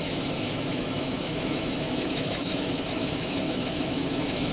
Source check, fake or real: fake